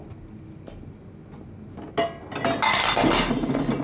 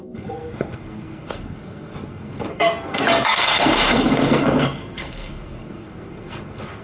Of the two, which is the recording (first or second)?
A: first